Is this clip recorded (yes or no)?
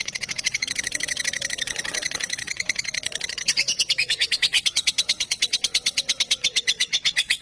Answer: no